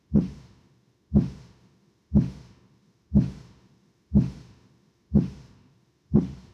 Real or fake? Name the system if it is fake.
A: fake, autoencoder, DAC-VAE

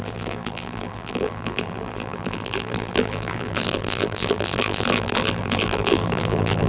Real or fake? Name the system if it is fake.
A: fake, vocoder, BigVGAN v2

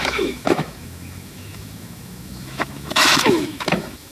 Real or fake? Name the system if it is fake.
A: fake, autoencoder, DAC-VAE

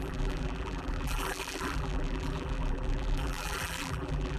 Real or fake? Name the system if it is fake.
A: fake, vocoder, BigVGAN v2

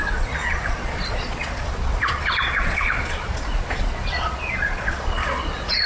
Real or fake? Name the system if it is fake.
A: fake, vocoder, Vocos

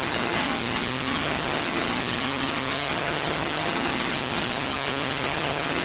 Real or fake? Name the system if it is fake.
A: fake, vocoder, HiFi-GAN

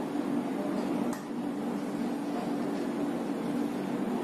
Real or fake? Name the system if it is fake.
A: real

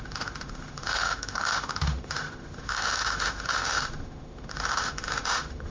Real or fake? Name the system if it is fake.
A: fake, autoencoder, DAC-VAE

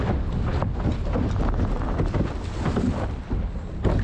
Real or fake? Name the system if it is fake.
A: real